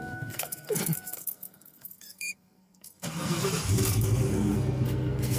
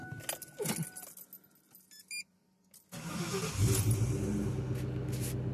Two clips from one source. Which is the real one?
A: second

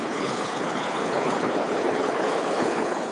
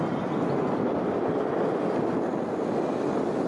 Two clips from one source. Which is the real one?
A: second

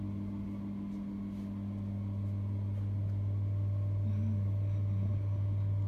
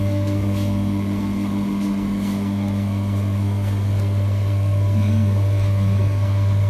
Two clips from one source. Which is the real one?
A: first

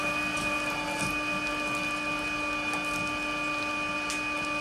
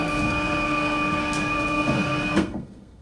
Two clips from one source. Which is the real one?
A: first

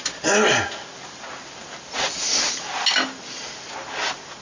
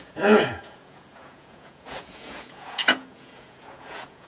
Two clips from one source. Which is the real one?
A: first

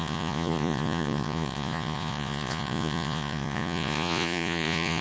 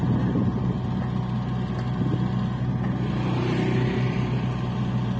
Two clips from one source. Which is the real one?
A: second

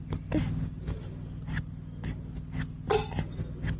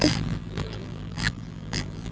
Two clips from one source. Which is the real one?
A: first